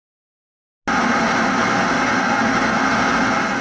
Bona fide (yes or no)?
yes